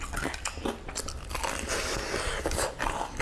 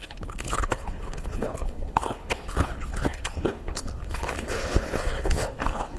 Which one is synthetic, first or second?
second